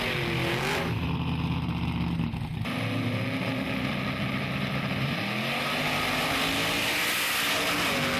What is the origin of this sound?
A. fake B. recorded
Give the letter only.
B